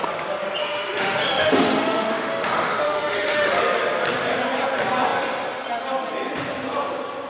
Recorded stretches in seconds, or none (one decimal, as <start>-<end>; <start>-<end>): 0.0-0.6; 3.6-7.3